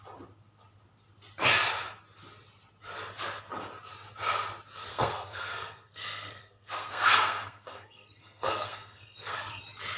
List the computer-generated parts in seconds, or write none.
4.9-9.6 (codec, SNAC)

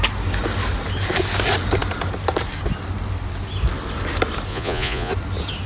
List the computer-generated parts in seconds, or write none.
4.5-5.1 (vocoder, Vocos)

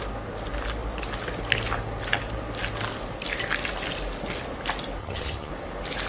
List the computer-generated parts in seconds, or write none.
5.0-5.5 (vocoder, HiFi-GAN)

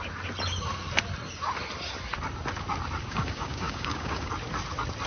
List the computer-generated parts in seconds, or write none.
3.0-4.3 (codec, DAC)

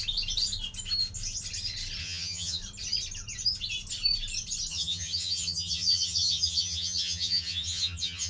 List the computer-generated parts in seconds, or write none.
2.0-2.6 (vocoder, HiFi-GAN); 4.7-8.3